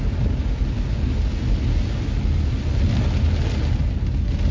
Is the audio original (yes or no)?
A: yes